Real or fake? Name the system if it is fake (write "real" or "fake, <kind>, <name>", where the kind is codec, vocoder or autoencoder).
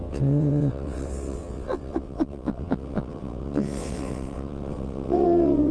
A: fake, vocoder, WaveNeXt